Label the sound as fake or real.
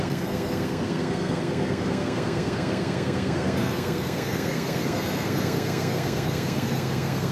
fake